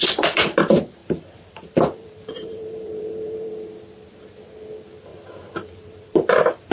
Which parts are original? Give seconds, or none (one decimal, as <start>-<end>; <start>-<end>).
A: 0.0-1.0; 3.5-5.1